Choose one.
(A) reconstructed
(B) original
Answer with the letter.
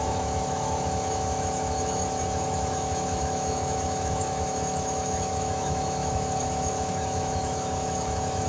A